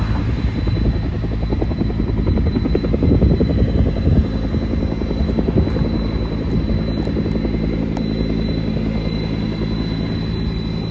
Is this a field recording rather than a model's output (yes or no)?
yes